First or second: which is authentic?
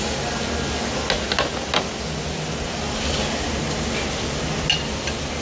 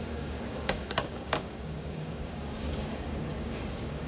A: first